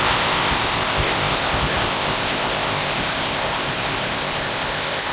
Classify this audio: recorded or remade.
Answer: remade